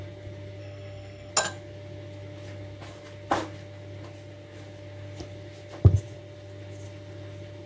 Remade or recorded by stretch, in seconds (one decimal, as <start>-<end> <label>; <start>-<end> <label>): 0.0-0.6 recorded; 0.6-1.3 remade; 1.3-7.7 recorded